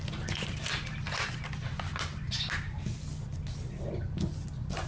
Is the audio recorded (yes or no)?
yes